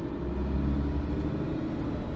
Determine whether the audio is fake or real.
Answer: real